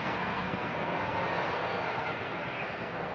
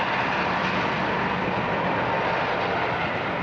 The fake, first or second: first